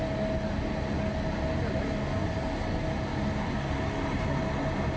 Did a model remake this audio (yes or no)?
no